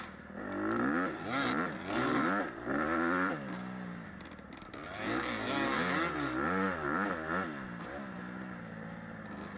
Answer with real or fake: real